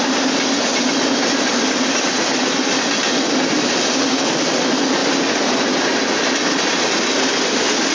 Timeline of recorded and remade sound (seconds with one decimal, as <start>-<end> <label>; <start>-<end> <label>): 0.0-7.9 recorded